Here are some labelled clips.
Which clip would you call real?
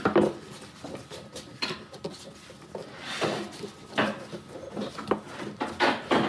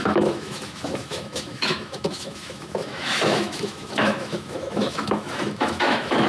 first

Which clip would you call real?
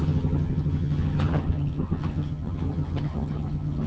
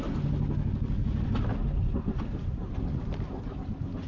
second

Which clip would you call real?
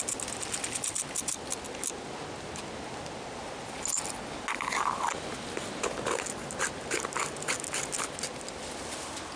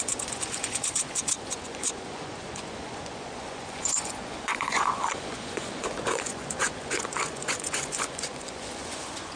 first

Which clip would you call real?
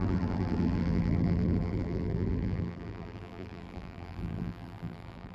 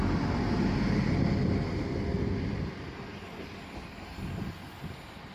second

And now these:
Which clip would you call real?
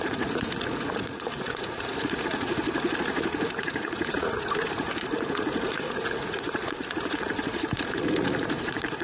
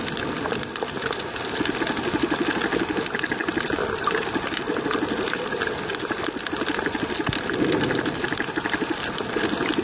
second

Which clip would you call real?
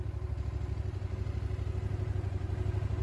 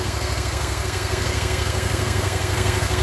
first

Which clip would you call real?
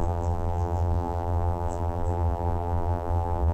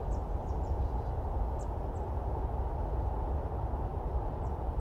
second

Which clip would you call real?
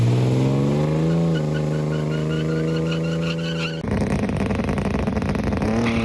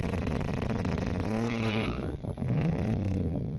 first